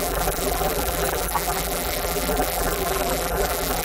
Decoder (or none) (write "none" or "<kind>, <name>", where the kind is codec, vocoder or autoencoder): vocoder, BigVGAN v2